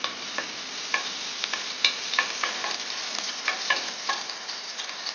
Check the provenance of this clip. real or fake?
real